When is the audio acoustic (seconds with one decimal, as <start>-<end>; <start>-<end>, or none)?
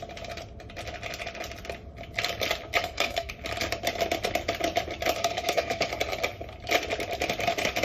0.0-2.8; 3.3-5.2; 5.9-7.8